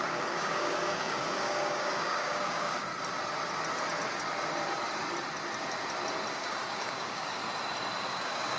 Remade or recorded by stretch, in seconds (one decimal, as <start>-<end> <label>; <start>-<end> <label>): 0.0-2.9 remade; 2.9-6.3 recorded; 6.3-7.4 remade; 7.4-8.1 recorded; 8.1-8.6 remade